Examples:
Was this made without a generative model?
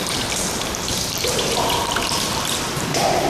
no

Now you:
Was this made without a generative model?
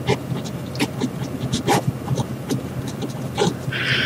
yes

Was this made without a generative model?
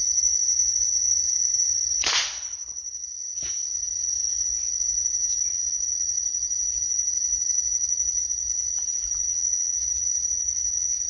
no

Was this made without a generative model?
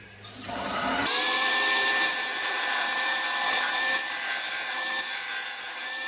no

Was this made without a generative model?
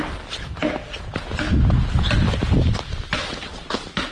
yes